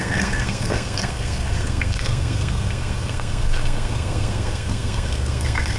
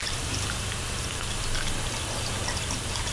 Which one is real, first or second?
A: second